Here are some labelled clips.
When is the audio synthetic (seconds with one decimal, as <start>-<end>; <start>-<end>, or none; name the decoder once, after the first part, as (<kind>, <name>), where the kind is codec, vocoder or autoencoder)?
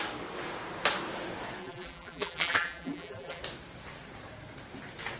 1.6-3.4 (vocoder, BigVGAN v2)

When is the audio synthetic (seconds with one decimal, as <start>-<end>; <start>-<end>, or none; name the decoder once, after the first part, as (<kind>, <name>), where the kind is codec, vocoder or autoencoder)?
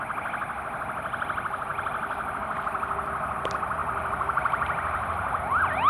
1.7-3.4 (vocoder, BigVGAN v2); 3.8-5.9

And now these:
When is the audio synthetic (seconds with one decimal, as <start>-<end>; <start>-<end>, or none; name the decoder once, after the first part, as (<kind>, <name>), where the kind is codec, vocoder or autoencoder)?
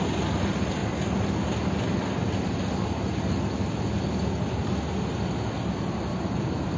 none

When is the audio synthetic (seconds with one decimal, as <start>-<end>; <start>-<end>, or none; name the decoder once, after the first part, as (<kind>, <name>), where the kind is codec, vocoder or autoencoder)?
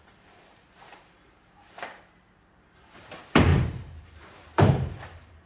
0.0-5.5 (vocoder, BigVGAN v2)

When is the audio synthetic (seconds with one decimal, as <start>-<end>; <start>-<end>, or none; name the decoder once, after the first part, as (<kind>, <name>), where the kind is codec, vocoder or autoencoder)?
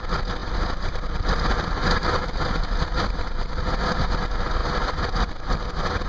0.4-4.1 (vocoder, BigVGAN v2)